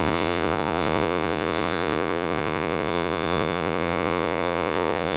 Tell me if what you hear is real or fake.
fake